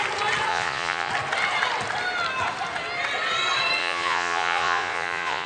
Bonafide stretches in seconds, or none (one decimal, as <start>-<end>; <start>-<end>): 0.0-0.5; 1.1-3.8